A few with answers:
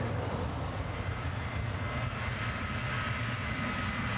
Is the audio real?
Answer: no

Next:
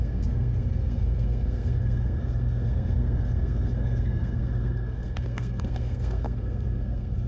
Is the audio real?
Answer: no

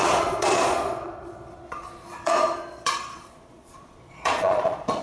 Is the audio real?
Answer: no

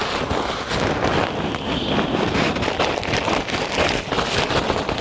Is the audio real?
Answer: yes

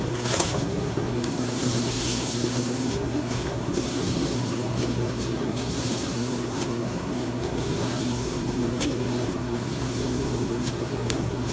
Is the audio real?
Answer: no